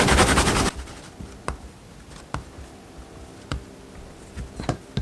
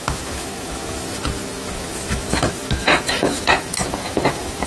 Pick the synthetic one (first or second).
second